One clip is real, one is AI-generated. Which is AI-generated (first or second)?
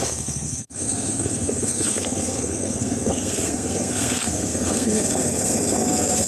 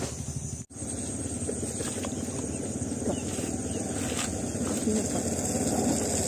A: first